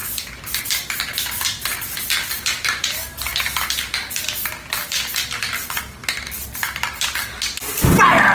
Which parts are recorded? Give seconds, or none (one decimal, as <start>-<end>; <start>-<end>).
0.6-4.6; 5.8-8.3